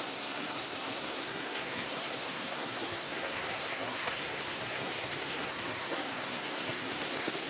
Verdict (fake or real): fake